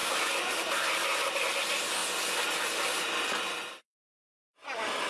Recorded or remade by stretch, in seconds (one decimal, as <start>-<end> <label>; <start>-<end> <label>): 0.0-1.4 remade; 1.4-5.1 recorded